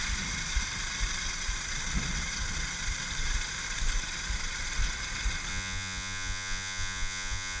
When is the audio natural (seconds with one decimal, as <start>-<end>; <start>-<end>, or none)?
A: 0.0-5.5